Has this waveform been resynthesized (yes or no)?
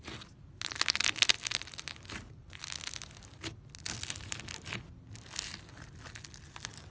no